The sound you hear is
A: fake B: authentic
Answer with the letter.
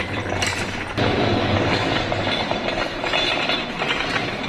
B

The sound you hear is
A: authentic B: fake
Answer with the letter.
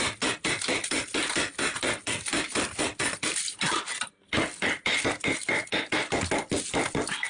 A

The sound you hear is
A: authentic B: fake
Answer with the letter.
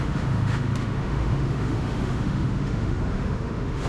B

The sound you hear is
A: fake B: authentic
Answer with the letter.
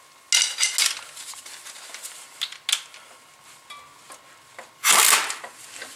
B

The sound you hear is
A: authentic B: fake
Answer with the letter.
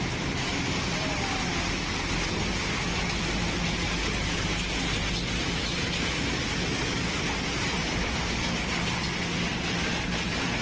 A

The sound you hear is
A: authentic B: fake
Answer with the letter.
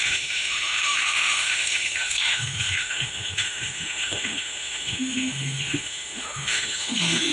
B